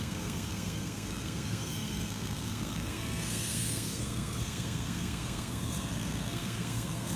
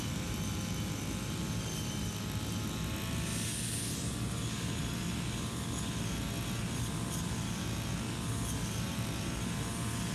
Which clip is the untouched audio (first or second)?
second